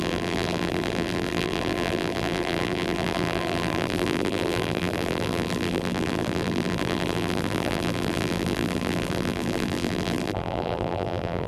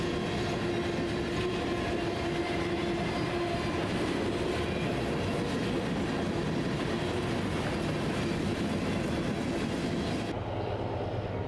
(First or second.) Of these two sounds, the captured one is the second